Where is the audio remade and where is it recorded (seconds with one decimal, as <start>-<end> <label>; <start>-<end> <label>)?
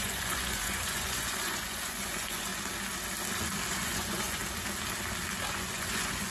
0.0-2.5 remade; 2.5-3.7 recorded; 3.7-4.4 remade; 4.4-5.5 recorded; 5.5-6.3 remade